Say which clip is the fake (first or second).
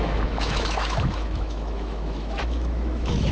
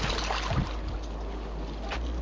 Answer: first